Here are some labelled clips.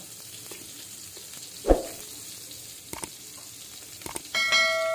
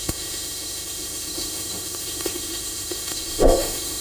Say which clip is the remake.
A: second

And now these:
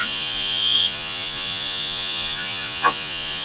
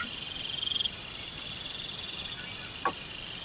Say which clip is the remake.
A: first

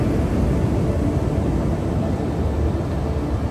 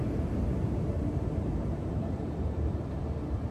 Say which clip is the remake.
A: second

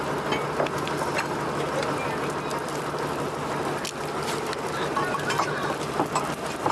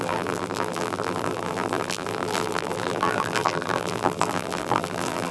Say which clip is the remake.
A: second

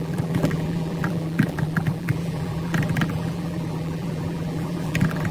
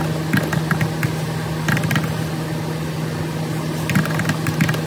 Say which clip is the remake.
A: first